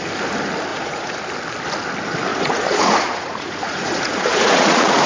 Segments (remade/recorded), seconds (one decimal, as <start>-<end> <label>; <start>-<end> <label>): 0.0-0.7 recorded; 0.7-1.2 remade; 1.2-2.3 recorded; 2.3-5.1 remade